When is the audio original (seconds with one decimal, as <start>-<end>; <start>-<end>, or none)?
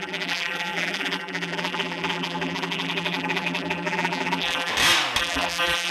4.7-5.2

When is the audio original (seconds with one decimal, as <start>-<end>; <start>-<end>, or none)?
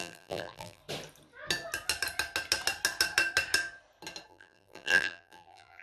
0.8-4.3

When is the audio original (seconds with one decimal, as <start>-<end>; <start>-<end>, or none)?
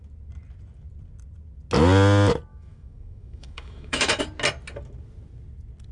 0.0-2.5; 4.2-5.9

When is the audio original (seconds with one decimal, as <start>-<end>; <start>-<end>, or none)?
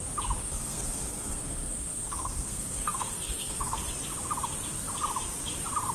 0.0-0.4; 3.8-5.9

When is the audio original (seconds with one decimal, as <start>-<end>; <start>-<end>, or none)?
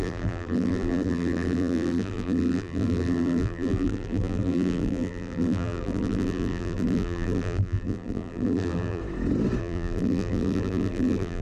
9.0-9.6